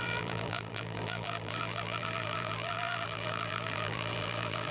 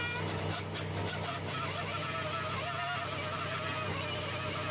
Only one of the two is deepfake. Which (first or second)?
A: first